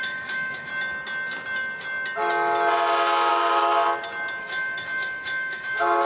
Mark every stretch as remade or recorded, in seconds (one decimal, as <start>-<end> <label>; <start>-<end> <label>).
0.0-0.7 remade; 0.7-3.3 recorded; 3.3-3.7 remade; 3.7-4.4 recorded; 4.4-6.1 remade